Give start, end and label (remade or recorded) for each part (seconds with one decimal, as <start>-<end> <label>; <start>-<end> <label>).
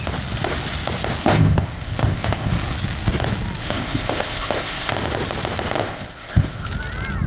0.0-1.2 recorded; 1.2-2.5 remade; 2.5-3.6 recorded; 3.6-4.9 remade; 4.9-5.8 recorded; 5.8-6.7 remade; 6.7-7.3 recorded